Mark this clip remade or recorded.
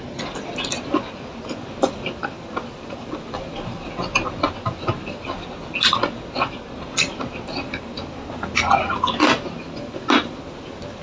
recorded